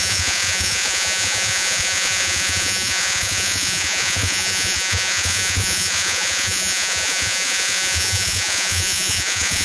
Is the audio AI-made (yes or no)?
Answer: yes